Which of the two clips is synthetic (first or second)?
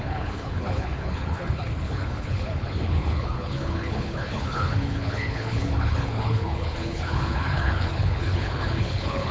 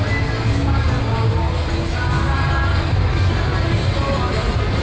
first